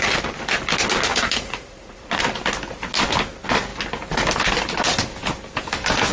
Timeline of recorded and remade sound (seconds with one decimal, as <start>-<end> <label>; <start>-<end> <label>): 0.0-1.1 recorded; 1.1-2.2 remade; 2.2-6.1 recorded